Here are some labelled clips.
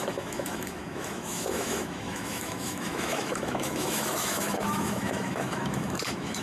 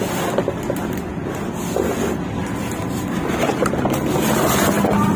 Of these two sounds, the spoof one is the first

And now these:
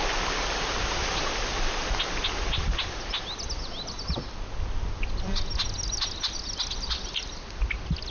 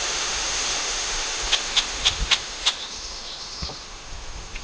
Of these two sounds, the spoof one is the second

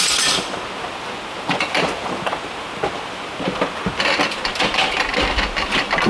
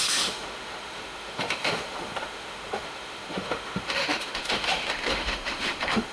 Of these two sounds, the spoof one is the second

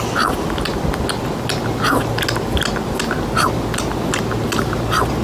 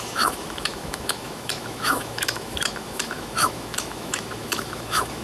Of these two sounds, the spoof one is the second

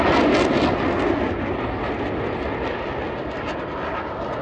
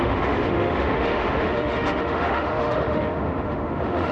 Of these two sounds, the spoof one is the second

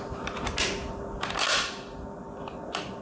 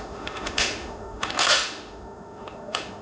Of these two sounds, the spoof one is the second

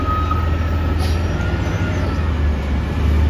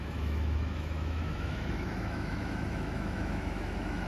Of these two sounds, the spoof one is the second